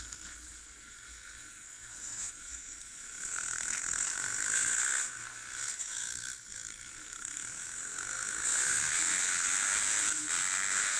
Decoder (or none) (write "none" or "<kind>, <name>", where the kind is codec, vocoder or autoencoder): codec, SNAC